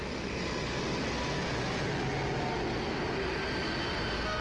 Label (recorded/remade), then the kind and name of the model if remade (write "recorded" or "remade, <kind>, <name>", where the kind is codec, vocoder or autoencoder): recorded